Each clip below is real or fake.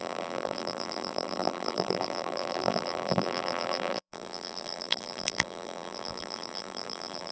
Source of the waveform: fake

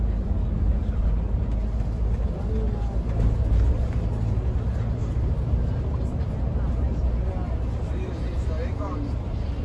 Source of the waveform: real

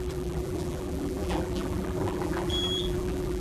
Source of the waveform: fake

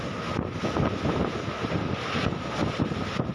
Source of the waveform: real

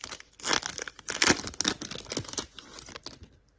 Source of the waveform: real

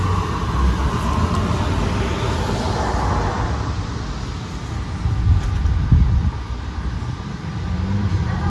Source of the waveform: real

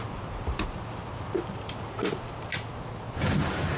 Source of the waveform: real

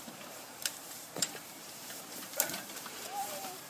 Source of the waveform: fake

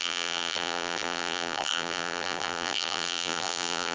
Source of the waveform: fake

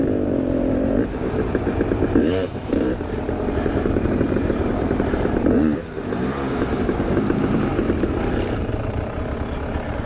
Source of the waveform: fake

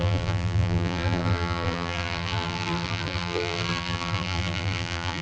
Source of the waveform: fake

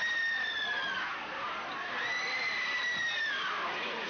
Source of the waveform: real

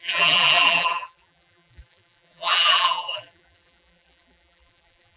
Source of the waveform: fake